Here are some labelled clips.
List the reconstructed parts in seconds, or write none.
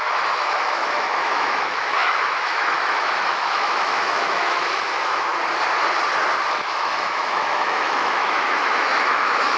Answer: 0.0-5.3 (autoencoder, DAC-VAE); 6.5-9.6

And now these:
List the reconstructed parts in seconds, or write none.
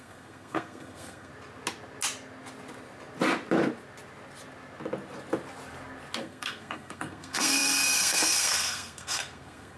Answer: 0.0-1.3 (codec, SNAC); 6.2-9.8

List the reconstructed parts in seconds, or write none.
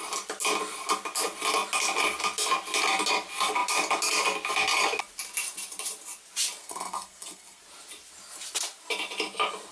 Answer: 6.6-7.6 (codec, SNAC)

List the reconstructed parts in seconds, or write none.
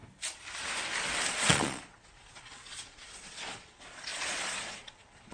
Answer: 1.3-5.3 (vocoder, Vocos)